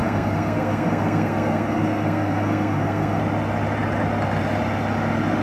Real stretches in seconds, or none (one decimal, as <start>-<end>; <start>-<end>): 3.2-5.4